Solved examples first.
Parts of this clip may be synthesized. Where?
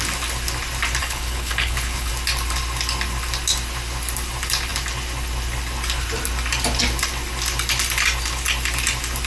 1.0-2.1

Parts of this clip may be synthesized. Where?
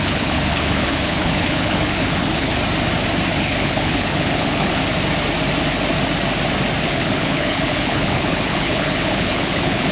0.0-2.5; 3.3-4.8; 6.8-9.9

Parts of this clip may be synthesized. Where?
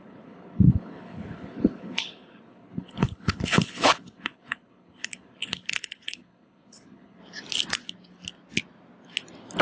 0.0-7.2